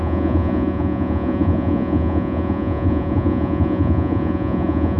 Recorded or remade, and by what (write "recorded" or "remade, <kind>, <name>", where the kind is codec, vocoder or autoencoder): remade, vocoder, Vocos